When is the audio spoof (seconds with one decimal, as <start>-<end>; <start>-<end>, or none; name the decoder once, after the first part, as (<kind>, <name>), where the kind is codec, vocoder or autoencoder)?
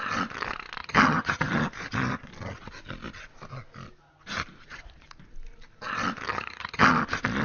0.8-1.6 (vocoder, HiFi-GAN); 6.3-6.9